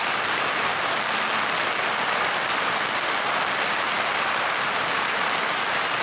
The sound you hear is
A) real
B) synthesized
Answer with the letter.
A